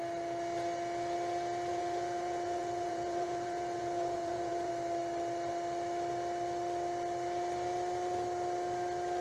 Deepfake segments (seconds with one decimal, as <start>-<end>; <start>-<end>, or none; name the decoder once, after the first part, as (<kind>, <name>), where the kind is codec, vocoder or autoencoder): 1.7-4.7 (vocoder, Vocos)